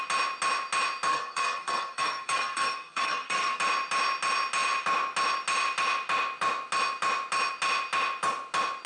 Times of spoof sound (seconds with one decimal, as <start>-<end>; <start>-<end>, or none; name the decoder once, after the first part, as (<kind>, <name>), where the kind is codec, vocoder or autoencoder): 1.1-3.6 (codec, SNAC)